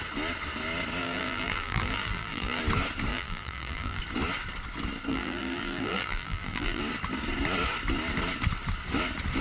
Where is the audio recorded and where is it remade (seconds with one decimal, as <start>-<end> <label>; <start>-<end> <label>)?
0.0-1.0 recorded; 1.0-2.6 remade; 2.6-3.1 recorded; 3.1-4.0 remade; 4.0-5.1 recorded; 5.1-6.8 remade; 6.8-9.4 recorded

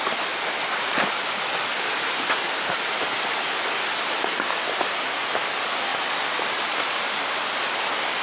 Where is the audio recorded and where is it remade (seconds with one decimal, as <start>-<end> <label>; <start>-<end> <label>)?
0.0-1.7 recorded; 1.7-2.9 remade; 2.9-8.2 recorded

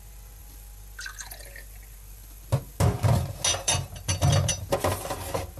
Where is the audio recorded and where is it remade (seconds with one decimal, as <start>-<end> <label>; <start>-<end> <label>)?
0.0-3.5 recorded; 3.5-4.8 remade; 4.8-5.6 recorded

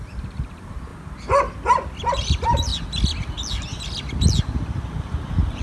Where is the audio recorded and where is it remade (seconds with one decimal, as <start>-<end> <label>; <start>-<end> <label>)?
0.0-0.9 remade; 0.9-2.1 recorded; 2.1-2.7 remade; 2.7-5.0 recorded; 5.0-5.6 remade

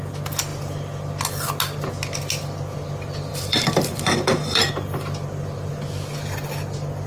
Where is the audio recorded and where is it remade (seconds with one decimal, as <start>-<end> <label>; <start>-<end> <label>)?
0.0-3.3 recorded; 3.3-4.7 remade; 4.7-7.1 recorded